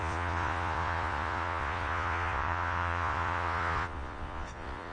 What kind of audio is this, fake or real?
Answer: fake